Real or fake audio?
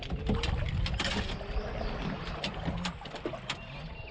real